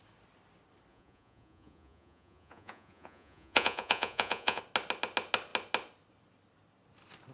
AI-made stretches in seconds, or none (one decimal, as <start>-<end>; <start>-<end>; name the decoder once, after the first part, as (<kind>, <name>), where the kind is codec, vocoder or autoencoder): 0.9-4.6 (vocoder, Vocos)